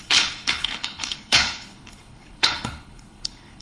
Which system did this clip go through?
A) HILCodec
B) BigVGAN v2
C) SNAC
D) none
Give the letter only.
A